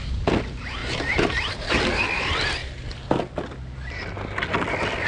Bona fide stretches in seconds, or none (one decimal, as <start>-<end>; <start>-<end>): 0.0-0.8; 1.8-5.1